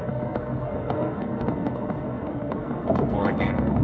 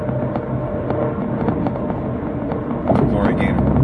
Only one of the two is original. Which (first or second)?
second